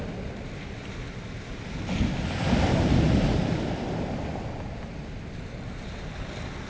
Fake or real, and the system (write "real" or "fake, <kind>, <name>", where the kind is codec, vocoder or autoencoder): real